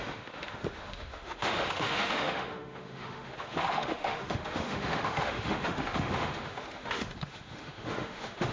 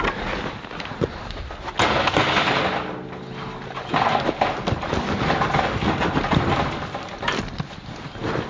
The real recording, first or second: second